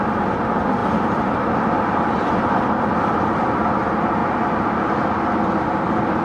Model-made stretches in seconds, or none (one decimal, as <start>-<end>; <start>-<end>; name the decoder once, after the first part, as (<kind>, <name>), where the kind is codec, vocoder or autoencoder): none